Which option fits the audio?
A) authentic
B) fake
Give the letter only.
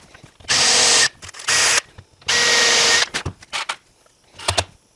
A